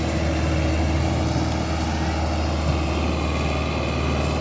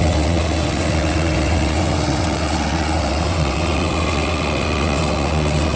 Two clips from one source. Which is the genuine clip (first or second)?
first